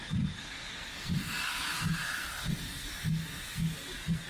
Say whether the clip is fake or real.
fake